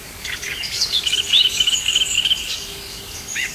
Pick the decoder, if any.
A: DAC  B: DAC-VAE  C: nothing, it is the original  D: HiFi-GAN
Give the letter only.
A